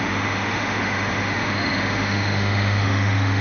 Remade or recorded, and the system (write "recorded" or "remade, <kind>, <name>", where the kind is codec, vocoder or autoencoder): remade, autoencoder, DAC-VAE